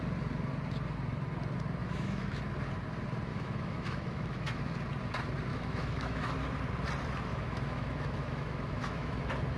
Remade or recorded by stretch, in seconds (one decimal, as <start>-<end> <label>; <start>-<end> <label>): 0.0-1.8 recorded; 1.8-2.4 remade; 2.4-3.3 recorded; 3.3-4.6 remade; 4.6-5.5 recorded; 5.5-6.3 remade; 6.3-7.3 recorded; 7.3-9.2 remade; 9.2-9.6 recorded